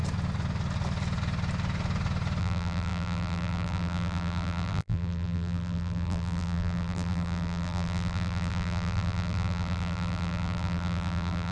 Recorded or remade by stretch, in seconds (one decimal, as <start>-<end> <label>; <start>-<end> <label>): 0.0-2.4 recorded; 2.4-11.5 remade